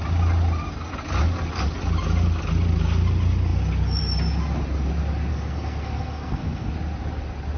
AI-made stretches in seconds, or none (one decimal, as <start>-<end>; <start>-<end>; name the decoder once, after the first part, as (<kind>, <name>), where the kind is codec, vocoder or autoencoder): 5.3-6.7 (codec, SNAC)